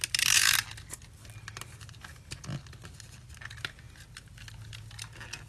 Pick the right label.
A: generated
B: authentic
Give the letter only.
B